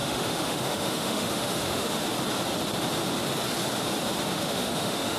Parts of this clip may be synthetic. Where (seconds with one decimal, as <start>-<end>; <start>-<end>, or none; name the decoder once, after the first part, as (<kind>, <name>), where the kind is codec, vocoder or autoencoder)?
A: 0.0-2.0 (autoencoder, DAC-VAE); 4.3-5.2